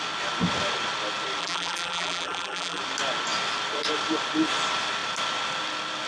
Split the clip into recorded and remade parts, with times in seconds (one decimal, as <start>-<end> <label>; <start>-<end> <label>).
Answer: 0.0-1.4 recorded; 1.4-2.8 remade; 2.8-6.1 recorded